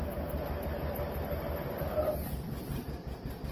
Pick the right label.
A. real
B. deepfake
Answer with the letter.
A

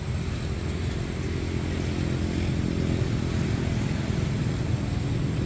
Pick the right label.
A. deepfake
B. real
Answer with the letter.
B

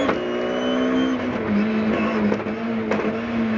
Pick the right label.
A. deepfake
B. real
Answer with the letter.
B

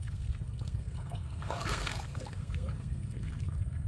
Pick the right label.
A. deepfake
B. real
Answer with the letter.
A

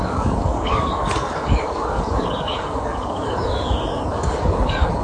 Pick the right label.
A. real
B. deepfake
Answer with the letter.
B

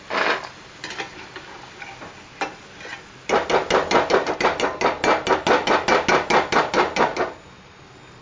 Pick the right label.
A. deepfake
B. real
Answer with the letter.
B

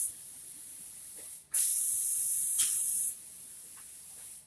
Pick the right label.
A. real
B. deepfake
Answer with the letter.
B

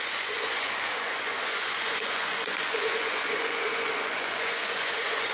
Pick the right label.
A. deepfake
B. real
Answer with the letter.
A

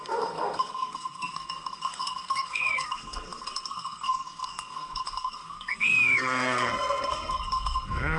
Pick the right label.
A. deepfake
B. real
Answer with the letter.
A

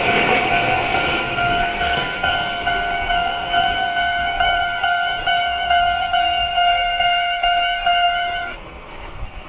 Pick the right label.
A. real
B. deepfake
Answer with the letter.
B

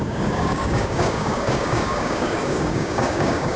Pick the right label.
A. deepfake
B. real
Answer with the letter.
A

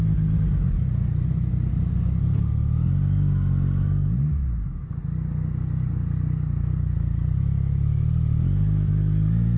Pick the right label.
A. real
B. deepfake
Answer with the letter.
A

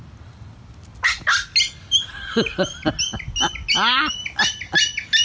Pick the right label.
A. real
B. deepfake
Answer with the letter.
A